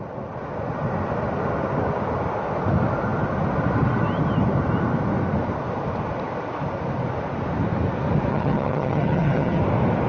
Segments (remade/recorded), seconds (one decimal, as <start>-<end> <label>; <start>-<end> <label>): 0.0-8.3 recorded; 8.3-9.6 remade; 9.6-10.1 recorded